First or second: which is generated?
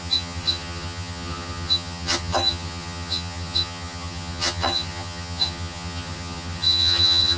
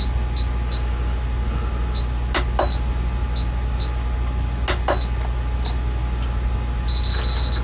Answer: first